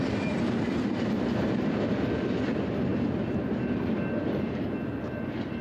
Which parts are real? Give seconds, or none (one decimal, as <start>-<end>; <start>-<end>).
0.0-5.6